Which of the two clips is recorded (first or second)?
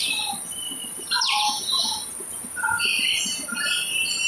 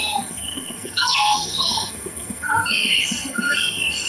first